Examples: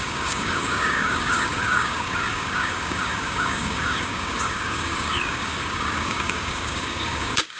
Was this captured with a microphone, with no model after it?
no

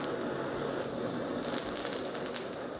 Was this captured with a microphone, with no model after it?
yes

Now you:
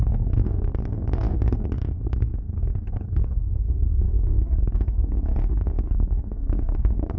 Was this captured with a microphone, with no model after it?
no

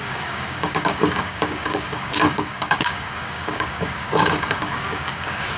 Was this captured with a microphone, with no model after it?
no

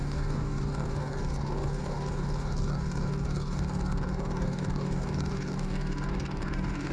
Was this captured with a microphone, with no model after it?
no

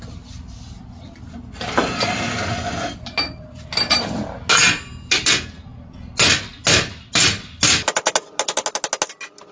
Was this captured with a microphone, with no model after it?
yes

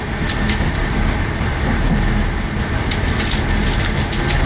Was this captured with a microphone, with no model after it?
yes